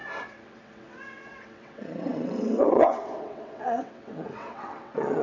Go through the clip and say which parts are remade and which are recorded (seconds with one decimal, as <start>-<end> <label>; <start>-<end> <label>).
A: 0.0-5.2 remade